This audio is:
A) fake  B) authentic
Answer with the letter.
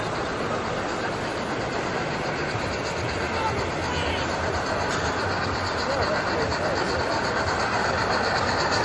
B